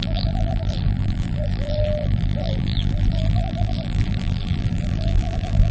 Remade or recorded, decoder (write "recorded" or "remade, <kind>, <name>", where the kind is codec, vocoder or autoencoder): remade, vocoder, BigVGAN v2